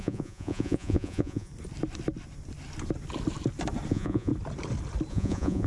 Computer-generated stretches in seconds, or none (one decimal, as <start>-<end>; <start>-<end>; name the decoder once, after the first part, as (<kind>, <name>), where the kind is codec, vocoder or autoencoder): 0.0-1.5 (vocoder, Vocos); 3.9-4.3; 5.1-5.7